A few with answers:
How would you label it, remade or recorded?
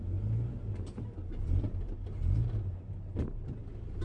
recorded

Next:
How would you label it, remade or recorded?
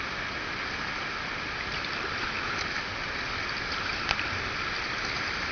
recorded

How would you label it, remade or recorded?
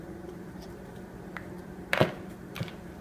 remade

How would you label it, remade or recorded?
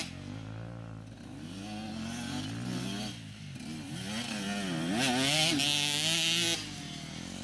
recorded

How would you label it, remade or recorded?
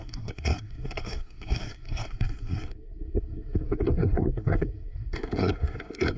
remade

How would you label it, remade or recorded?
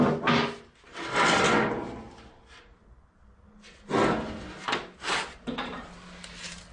recorded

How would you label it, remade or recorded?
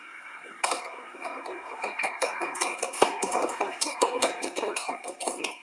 remade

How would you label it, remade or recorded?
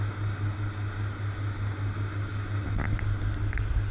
recorded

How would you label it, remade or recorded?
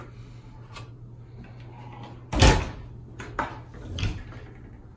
recorded